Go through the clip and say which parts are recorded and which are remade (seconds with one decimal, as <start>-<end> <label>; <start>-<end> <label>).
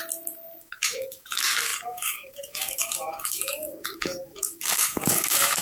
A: 0.0-0.6 recorded; 0.6-5.6 remade